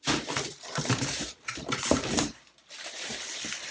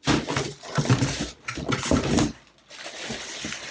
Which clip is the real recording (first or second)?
second